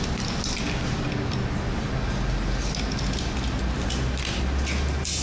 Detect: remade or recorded recorded